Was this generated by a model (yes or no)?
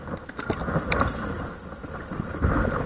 no